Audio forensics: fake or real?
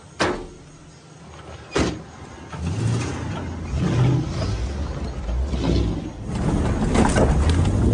real